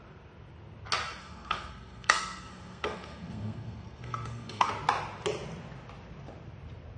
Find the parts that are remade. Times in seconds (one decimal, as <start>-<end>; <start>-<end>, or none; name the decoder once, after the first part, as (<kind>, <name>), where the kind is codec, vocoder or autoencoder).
1.2-4.7 (codec, SNAC)